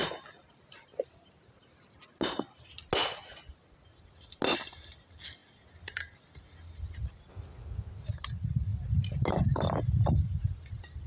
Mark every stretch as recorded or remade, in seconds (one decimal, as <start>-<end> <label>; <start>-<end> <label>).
0.0-11.1 recorded